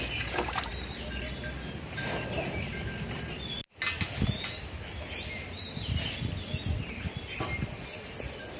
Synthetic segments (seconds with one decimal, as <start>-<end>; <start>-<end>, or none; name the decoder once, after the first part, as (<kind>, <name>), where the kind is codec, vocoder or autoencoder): none